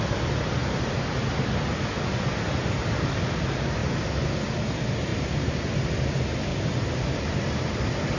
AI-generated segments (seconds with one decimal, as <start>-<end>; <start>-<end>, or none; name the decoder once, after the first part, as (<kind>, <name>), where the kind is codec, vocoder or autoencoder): 3.8-4.3 (vocoder, BigVGAN v2); 5.1-5.9; 6.5-7.7